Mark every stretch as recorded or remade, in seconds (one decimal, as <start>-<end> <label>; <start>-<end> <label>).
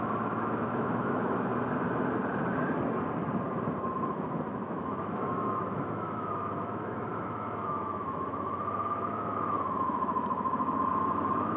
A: 0.0-1.5 remade; 1.5-3.9 recorded; 3.9-11.6 remade